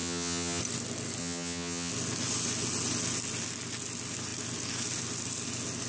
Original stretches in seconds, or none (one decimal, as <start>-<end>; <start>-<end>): 0.6-1.2; 1.9-5.9